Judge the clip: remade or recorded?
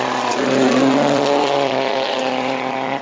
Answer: remade